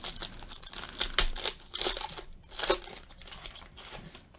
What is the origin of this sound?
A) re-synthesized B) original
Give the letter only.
B